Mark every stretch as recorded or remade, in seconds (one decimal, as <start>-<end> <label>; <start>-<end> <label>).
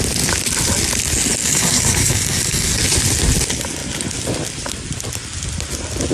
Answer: 0.0-1.4 recorded; 1.4-2.8 remade; 2.8-6.1 recorded